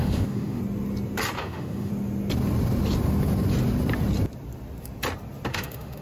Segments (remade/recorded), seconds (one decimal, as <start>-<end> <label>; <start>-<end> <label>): 0.0-0.6 remade; 0.6-1.4 recorded; 1.4-1.9 remade; 1.9-5.5 recorded; 5.5-6.0 remade